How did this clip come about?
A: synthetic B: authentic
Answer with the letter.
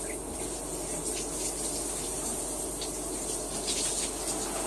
B